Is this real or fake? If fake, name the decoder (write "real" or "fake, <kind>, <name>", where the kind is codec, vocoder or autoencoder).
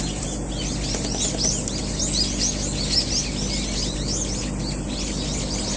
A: real